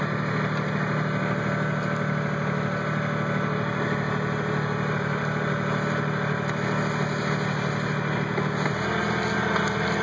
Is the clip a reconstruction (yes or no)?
no